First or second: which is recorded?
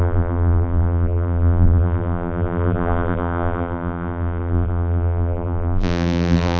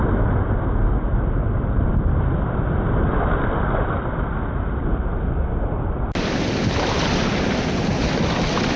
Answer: second